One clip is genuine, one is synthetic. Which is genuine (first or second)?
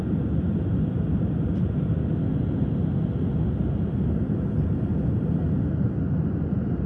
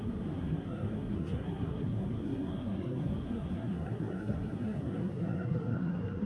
first